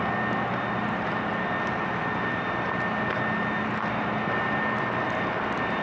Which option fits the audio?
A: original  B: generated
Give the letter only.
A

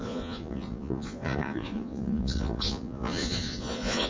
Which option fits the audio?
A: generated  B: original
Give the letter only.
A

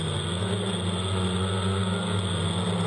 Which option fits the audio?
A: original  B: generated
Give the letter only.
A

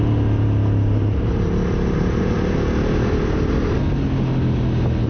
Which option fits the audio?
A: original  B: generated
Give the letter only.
A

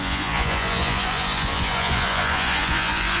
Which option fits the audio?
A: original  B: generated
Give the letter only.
B